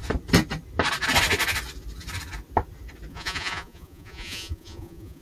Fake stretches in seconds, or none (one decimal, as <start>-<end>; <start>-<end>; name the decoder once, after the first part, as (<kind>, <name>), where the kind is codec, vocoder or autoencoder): 3.1-5.2 (vocoder, Vocos)